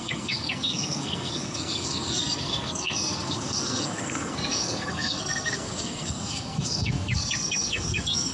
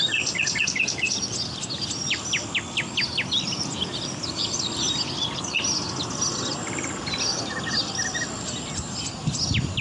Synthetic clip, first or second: first